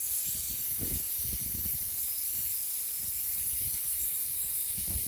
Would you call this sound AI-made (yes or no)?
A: yes